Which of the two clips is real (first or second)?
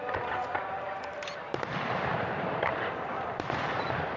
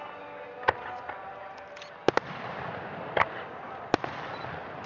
second